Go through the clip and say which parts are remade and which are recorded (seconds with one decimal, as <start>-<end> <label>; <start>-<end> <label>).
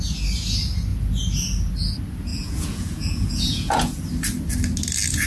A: 0.0-2.3 recorded; 2.3-4.1 remade; 4.1-5.3 recorded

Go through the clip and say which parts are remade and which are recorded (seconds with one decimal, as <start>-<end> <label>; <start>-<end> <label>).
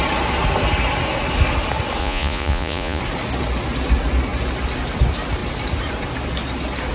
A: 0.0-2.0 recorded; 2.0-3.0 remade; 3.0-6.9 recorded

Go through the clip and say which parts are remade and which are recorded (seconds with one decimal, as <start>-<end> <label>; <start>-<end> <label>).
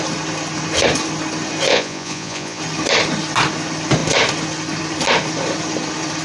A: 0.0-1.7 recorded; 1.7-2.6 remade; 2.6-6.2 recorded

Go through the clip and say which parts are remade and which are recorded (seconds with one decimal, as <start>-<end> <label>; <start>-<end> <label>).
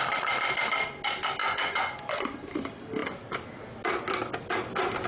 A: 0.0-1.4 recorded; 1.4-2.1 remade; 2.1-5.1 recorded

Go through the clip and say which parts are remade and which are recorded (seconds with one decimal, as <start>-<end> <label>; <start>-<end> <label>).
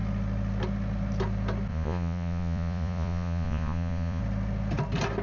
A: 0.0-1.7 recorded; 1.7-4.2 remade; 4.2-5.2 recorded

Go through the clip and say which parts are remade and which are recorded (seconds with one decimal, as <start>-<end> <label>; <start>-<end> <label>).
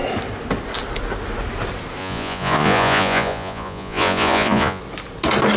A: 0.0-2.0 recorded; 2.0-4.8 remade; 4.8-5.6 recorded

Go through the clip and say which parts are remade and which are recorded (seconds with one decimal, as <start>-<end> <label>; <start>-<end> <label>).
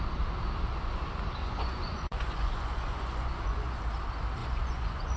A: 0.0-1.4 recorded; 1.4-3.8 remade; 3.8-4.4 recorded; 4.4-5.2 remade